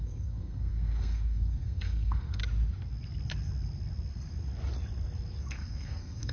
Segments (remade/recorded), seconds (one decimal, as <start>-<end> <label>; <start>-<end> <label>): 0.0-2.4 remade; 2.4-5.4 recorded; 5.4-6.3 remade